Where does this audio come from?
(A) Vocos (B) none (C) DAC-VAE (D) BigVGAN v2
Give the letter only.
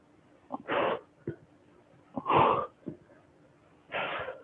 B